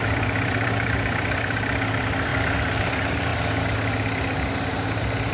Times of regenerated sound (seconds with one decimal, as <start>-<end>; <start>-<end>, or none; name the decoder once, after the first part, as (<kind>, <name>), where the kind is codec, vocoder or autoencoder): 0.0-3.3 (vocoder, BigVGAN v2)